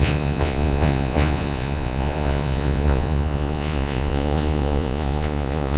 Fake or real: fake